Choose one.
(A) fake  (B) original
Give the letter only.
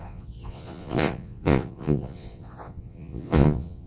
A